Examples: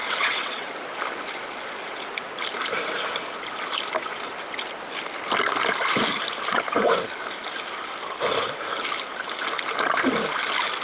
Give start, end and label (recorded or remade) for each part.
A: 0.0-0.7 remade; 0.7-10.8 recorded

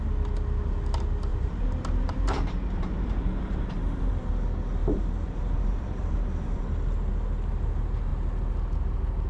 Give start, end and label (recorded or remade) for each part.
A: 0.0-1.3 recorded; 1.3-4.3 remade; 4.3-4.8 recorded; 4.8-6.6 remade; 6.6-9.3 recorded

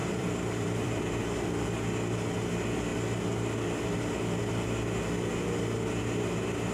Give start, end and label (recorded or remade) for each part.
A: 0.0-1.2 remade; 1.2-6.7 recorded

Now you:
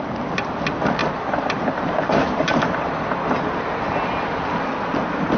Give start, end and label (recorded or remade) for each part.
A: 0.0-5.4 recorded

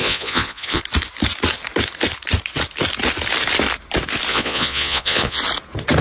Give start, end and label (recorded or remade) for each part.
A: 0.0-0.8 remade; 0.8-4.3 recorded; 4.3-5.4 remade; 5.4-6.0 recorded

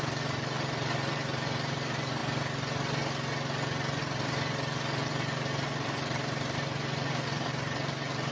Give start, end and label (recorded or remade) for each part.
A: 0.0-2.2 remade; 2.2-4.0 recorded; 4.0-8.3 remade

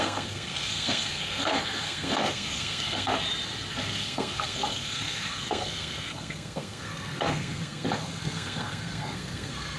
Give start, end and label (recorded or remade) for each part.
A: 0.0-3.1 remade; 3.1-3.7 recorded; 3.7-9.8 remade

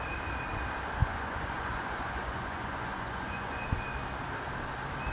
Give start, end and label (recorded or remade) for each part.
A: 0.0-1.0 recorded; 1.0-3.7 remade; 3.7-5.1 recorded